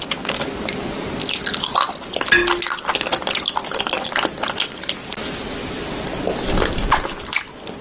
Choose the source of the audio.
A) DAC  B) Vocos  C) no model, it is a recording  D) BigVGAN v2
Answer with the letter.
C